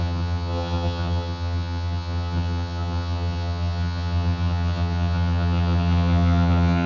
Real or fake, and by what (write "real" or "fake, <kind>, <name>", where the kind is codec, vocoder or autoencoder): fake, vocoder, HiFi-GAN